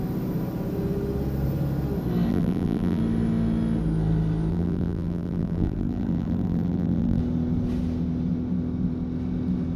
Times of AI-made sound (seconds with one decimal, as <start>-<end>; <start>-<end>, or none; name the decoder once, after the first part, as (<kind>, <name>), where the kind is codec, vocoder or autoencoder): 2.3-3.0 (vocoder, BigVGAN v2); 4.5-7.2